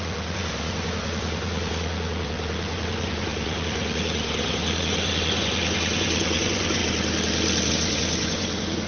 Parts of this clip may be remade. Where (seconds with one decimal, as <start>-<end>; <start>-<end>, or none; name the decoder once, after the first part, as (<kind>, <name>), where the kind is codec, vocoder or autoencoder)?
0.0-6.8 (vocoder, Vocos); 7.7-8.9